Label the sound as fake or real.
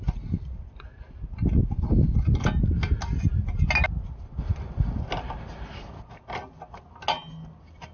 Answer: real